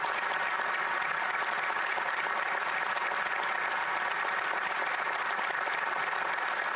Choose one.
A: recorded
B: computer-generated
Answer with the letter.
A